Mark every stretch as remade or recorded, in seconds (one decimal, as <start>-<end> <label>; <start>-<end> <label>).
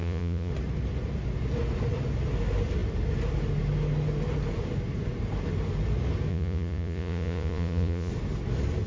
0.0-0.5 remade; 0.5-6.3 recorded; 6.3-8.1 remade; 8.1-8.9 recorded